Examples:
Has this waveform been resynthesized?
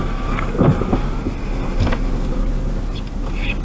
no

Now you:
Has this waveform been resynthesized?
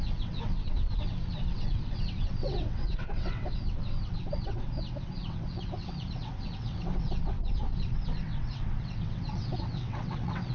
yes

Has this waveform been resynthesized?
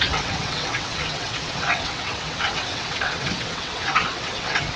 yes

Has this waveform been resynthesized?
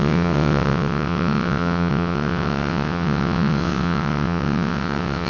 yes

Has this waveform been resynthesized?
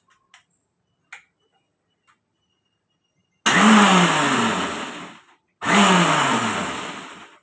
no